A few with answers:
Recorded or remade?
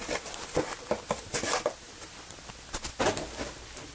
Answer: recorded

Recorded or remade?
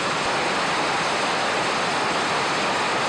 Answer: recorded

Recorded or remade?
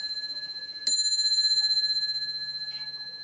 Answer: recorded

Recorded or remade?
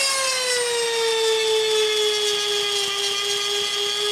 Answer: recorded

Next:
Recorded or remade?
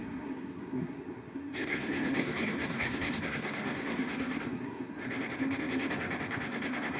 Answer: remade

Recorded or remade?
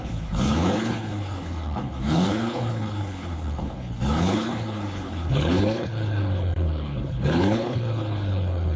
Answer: remade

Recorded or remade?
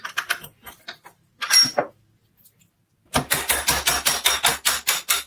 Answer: recorded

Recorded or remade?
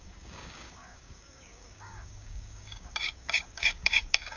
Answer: remade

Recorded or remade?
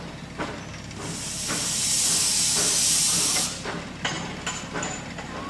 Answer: recorded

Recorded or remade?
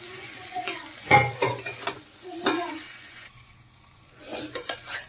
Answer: remade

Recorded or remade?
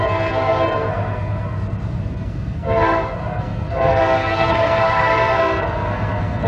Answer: remade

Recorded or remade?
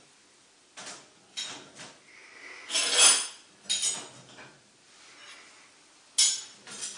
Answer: recorded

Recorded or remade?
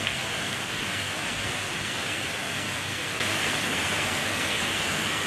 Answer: remade